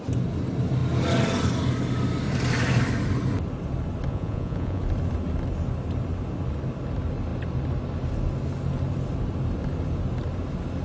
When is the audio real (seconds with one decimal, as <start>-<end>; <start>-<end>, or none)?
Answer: 0.0-4.1; 4.8-10.8